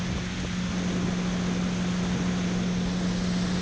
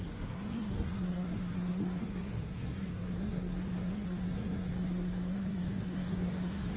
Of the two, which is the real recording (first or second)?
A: first